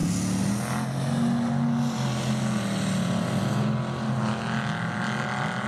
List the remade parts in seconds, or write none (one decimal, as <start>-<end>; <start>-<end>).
none